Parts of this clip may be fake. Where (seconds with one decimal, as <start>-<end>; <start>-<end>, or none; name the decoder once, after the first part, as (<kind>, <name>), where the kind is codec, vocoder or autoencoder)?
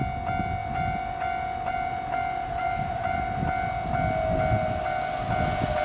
0.6-3.2 (vocoder, BigVGAN v2)